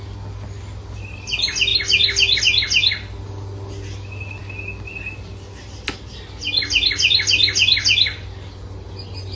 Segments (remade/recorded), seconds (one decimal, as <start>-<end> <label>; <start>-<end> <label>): 0.0-9.4 recorded